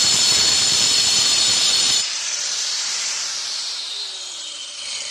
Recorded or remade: remade